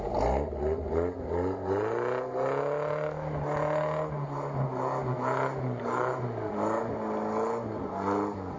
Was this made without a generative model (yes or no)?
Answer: yes